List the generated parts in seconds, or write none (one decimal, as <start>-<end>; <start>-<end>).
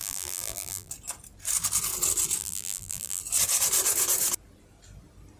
0.0-0.9; 2.4-3.2